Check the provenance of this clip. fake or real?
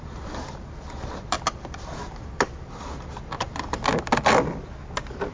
real